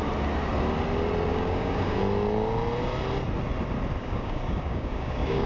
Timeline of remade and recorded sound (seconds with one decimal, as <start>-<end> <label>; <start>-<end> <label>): 0.0-1.3 recorded; 1.3-2.0 remade; 2.0-4.0 recorded; 4.0-5.5 remade